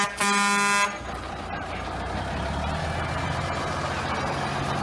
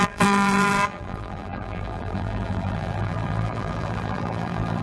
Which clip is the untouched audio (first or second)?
first